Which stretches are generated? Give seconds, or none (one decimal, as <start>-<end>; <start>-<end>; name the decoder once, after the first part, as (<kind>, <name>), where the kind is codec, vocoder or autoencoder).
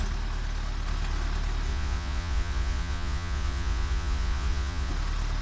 1.7-4.9 (vocoder, Vocos)